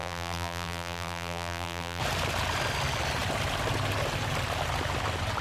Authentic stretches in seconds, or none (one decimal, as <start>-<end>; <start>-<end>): 2.0-5.4